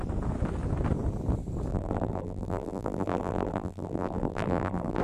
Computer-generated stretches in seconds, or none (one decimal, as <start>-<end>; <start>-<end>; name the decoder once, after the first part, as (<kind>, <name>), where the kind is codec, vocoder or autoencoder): 1.7-5.0 (vocoder, BigVGAN v2)